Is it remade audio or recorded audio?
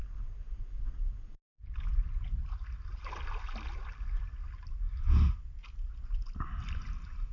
recorded